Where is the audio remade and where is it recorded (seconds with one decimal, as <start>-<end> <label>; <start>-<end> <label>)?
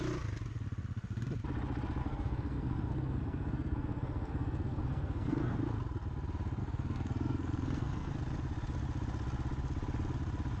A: 0.0-2.0 recorded; 2.0-5.6 remade; 5.6-6.6 recorded; 6.6-8.1 remade; 8.1-10.6 recorded